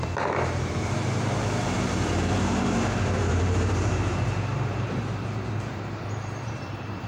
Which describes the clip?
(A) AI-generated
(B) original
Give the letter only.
A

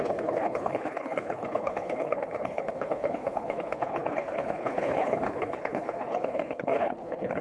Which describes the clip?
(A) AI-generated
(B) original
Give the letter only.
A